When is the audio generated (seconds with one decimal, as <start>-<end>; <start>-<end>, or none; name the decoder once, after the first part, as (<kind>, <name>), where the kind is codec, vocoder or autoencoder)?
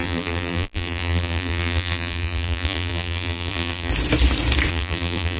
0.0-3.9 (vocoder, BigVGAN v2); 4.7-5.4